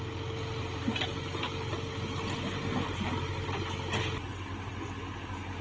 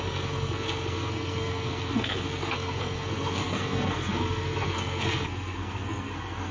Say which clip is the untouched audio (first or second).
first